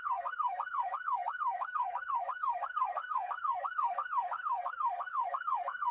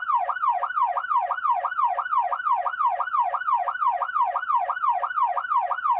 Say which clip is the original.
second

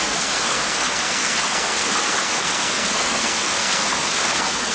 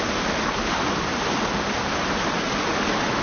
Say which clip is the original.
second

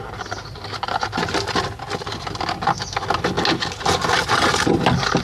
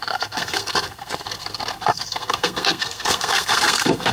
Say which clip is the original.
first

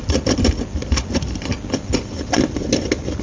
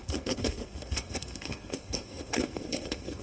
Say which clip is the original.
first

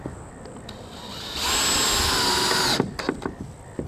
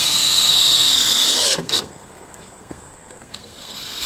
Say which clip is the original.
first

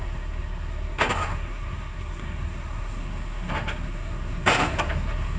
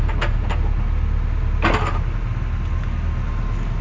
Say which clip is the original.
second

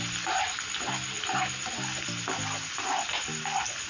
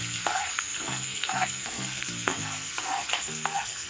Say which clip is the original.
first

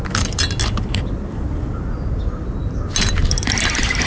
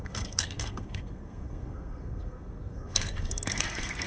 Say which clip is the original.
first